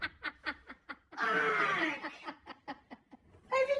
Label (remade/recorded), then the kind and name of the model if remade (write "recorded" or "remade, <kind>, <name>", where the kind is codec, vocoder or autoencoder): recorded